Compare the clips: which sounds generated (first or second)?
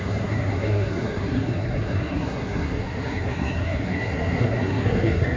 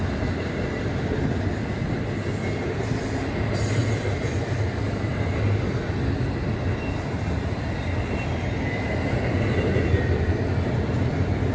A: first